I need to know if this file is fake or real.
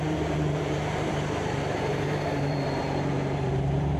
fake